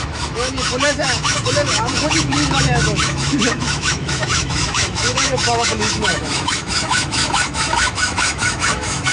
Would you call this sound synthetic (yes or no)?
yes